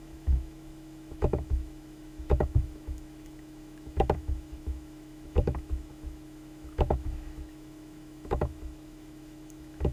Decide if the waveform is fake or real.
fake